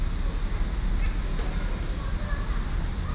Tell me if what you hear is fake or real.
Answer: real